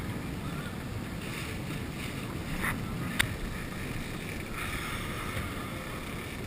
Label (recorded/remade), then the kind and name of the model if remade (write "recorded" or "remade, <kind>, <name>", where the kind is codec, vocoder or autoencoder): recorded